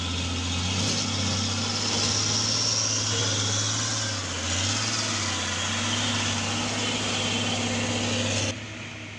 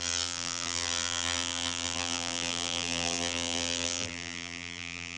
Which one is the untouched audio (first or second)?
first